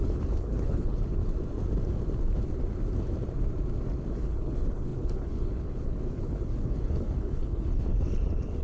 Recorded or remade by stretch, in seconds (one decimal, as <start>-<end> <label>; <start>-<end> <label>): 0.0-1.2 remade; 1.2-4.1 recorded; 4.1-8.6 remade